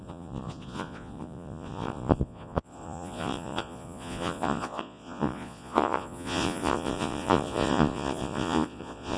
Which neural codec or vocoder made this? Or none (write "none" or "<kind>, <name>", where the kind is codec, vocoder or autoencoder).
vocoder, Vocos